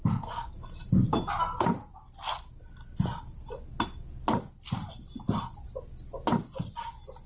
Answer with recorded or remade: recorded